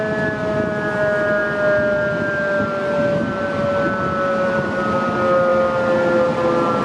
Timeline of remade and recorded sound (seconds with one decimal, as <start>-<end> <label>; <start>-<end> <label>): 0.0-6.8 recorded